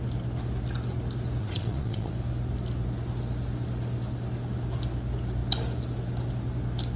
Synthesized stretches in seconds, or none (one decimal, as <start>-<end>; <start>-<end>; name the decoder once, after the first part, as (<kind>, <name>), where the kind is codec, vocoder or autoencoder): 1.4-2.1 (vocoder, Vocos)